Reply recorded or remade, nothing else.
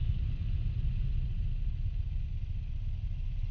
recorded